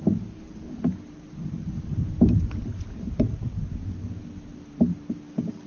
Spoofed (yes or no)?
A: no